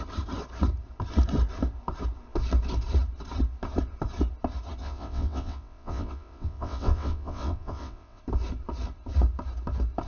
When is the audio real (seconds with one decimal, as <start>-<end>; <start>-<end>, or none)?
0.0-4.8; 8.2-10.1